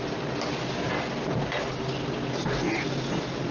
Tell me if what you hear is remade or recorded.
recorded